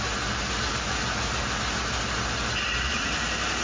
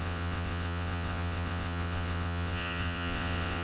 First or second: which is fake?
second